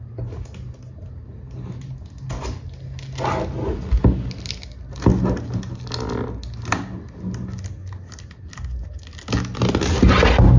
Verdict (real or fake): real